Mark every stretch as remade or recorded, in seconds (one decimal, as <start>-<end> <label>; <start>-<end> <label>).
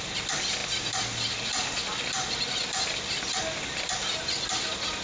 0.0-5.0 recorded